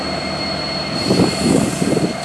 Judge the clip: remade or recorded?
recorded